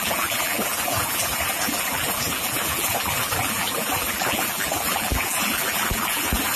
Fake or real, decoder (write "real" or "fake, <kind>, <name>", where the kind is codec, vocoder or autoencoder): fake, vocoder, BigVGAN v2